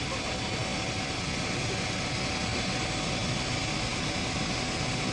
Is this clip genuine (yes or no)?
yes